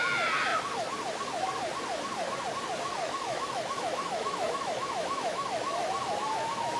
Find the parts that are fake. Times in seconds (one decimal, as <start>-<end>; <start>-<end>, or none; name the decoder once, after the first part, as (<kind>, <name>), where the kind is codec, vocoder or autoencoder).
3.0-6.8 (autoencoder, DAC-VAE)